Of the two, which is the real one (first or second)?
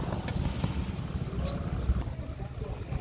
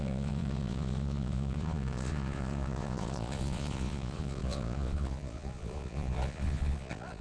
first